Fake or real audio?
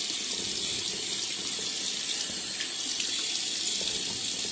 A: real